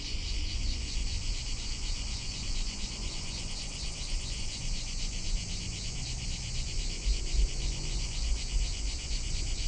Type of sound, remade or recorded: remade